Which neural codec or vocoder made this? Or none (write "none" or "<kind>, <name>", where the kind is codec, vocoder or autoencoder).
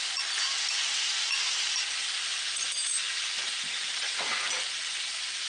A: none